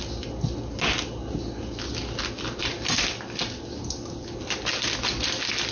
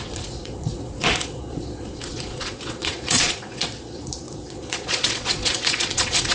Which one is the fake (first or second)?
second